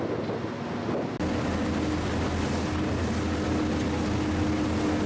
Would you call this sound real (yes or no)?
yes